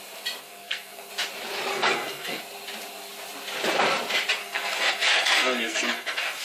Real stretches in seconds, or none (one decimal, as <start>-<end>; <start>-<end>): 0.0-0.4; 1.1-1.7; 2.4-4.4